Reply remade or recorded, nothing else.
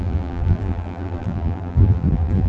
remade